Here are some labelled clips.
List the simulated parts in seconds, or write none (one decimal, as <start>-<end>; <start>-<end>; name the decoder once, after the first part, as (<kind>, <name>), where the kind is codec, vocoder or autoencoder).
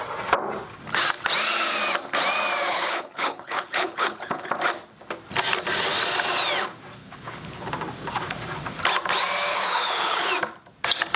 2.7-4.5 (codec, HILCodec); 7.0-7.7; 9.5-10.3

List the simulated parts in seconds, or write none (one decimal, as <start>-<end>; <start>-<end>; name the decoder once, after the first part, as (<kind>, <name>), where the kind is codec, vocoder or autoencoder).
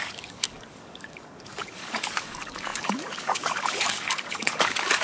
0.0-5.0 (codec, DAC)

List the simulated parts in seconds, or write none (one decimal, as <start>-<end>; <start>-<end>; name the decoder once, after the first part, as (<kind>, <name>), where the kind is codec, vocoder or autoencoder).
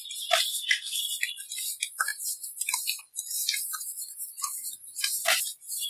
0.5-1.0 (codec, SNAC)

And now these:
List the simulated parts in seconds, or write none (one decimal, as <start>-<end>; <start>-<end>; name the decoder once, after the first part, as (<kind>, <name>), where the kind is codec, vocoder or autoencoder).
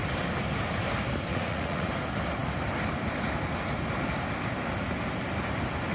1.3-1.9 (vocoder, Vocos)